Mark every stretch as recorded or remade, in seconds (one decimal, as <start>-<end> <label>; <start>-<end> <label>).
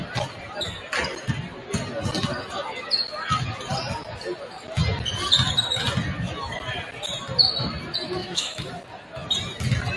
0.0-8.2 recorded; 8.2-8.7 remade; 8.7-10.0 recorded